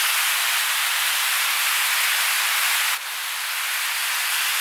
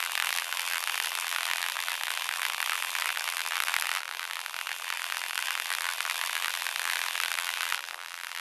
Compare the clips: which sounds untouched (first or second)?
first